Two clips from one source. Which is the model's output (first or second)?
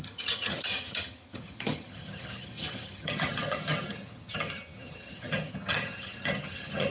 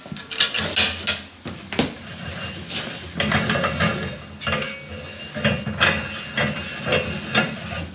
first